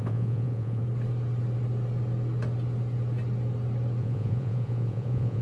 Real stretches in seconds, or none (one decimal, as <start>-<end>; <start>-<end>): 0.8-4.0